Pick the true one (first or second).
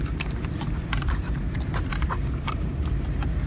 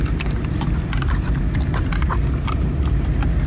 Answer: second